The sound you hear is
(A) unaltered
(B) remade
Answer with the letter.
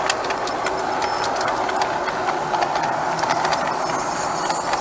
A